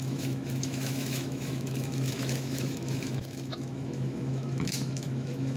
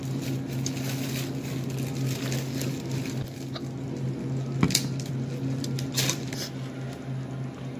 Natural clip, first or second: second